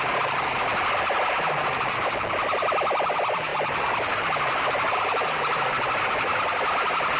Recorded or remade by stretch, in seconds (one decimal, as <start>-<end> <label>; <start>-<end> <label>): 0.0-7.2 recorded